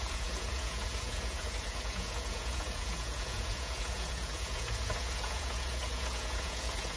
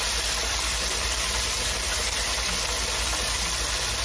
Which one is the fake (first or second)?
first